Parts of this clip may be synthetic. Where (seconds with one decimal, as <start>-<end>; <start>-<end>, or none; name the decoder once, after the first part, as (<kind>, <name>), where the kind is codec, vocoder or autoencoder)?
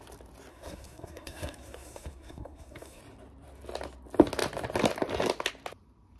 0.5-3.0 (codec, SNAC)